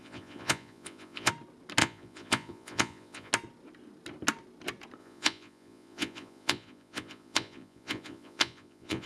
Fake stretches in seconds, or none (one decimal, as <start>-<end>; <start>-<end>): 0.0-1.3; 1.8-3.3; 5.0-9.1